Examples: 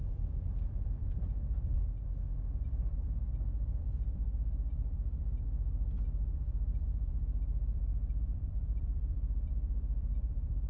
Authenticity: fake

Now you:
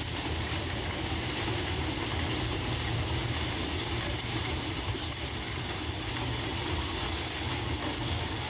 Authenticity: real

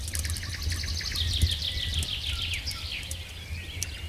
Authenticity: real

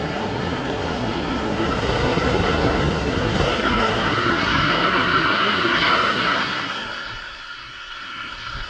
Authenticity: fake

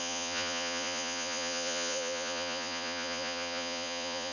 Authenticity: fake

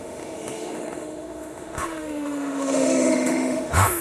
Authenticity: fake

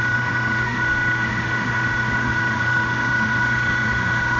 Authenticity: fake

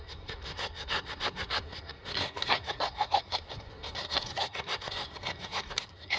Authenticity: fake